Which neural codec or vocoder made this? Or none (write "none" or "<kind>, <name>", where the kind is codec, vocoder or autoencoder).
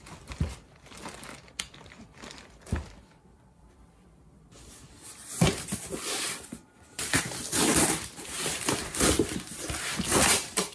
vocoder, BigVGAN v2